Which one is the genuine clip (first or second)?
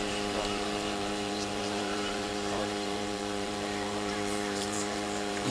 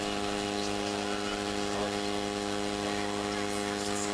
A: second